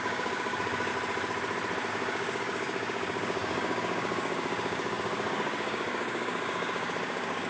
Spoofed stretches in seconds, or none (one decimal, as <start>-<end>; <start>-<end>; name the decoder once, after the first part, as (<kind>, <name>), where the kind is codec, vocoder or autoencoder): 0.0-0.9 (codec, DAC); 1.9-7.5